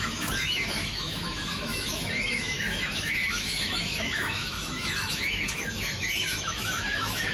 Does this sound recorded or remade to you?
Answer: remade